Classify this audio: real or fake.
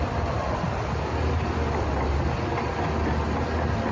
real